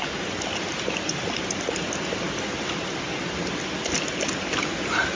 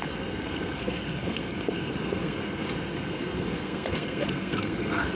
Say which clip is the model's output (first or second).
second